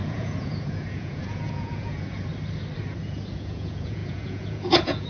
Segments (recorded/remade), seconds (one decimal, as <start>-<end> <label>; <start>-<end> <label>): 0.0-2.3 remade; 2.3-3.0 recorded; 3.0-5.1 remade